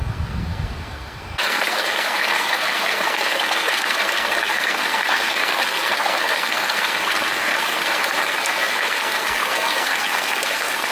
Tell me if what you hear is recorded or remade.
remade